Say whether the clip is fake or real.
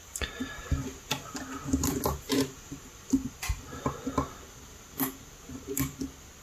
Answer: real